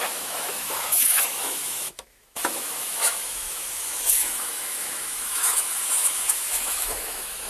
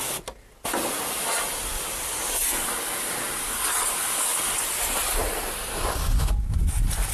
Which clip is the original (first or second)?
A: second